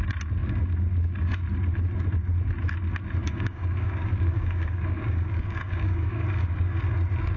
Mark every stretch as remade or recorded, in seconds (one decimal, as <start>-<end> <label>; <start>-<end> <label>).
0.0-3.2 recorded; 3.2-6.8 remade; 6.8-7.4 recorded